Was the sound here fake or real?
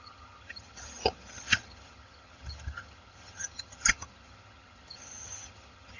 fake